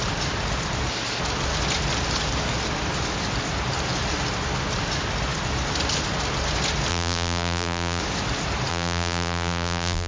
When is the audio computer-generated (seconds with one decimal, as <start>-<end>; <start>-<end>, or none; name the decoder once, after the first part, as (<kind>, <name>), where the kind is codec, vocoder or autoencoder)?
6.9-8.0 (vocoder, BigVGAN v2); 8.7-10.1